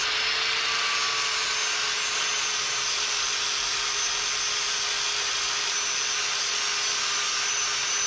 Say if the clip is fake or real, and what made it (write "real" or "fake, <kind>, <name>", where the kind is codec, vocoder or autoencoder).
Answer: real